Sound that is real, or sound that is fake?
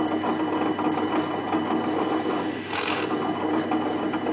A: real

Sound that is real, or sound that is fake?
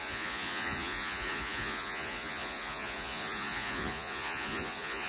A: fake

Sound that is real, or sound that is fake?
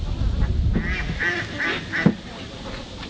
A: real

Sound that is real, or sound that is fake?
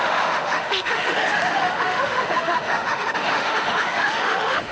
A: fake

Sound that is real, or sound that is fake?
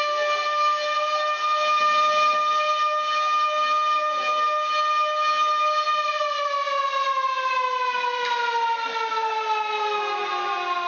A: real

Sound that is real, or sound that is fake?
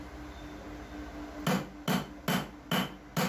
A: real